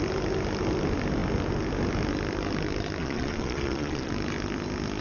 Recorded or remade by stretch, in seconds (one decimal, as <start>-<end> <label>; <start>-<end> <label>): 0.0-3.0 recorded; 3.0-4.1 remade; 4.1-5.0 recorded